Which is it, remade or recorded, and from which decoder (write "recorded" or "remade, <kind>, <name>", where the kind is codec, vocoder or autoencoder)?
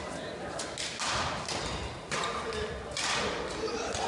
recorded